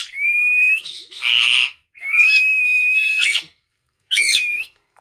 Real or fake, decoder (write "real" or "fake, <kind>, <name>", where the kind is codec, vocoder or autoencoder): fake, codec, SNAC